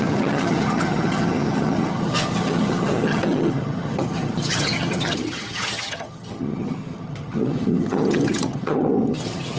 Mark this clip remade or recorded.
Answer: remade